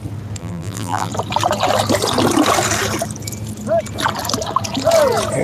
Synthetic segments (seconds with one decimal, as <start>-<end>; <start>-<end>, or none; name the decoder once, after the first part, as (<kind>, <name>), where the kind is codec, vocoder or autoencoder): 0.4-1.1 (vocoder, BigVGAN v2)